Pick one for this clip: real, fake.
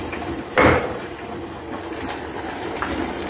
fake